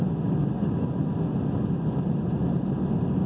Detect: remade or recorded recorded